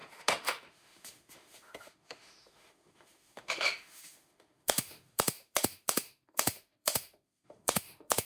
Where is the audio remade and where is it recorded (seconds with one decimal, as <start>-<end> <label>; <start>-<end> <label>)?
0.0-8.3 remade